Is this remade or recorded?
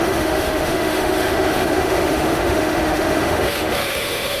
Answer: remade